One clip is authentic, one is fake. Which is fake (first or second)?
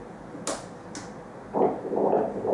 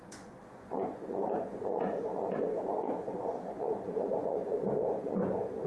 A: second